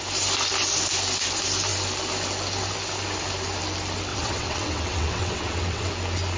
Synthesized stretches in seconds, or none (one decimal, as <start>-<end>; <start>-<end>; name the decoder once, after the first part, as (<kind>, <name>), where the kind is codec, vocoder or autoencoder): 4.1-5.9 (vocoder, WaveNeXt)